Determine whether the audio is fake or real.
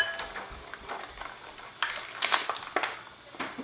real